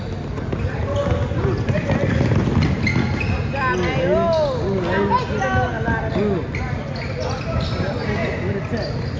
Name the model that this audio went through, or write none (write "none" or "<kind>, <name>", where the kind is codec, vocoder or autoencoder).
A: none